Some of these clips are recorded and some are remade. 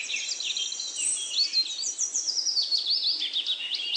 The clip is recorded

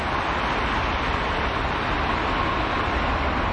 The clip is recorded